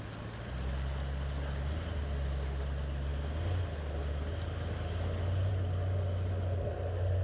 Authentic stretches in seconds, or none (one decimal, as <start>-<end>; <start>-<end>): 0.0-7.2